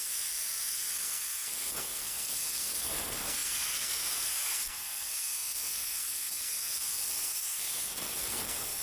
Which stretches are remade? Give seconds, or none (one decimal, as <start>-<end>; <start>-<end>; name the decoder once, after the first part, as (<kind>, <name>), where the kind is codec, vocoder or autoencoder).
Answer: 0.0-8.8 (codec, SNAC)